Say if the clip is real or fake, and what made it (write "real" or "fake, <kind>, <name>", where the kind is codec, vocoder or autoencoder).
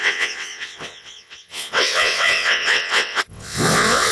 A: fake, vocoder, WaveNeXt